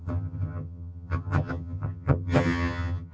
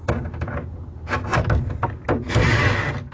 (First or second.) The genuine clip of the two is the second